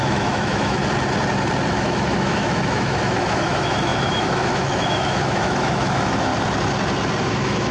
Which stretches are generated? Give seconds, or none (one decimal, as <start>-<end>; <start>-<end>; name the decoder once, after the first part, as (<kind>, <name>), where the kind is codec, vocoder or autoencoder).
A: 0.0-0.8 (autoencoder, DAC-VAE); 1.7-6.3; 7.3-7.7